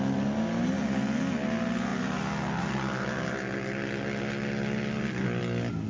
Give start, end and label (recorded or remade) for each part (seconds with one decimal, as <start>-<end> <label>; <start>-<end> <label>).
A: 0.0-5.9 recorded